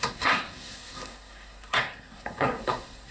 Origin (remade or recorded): remade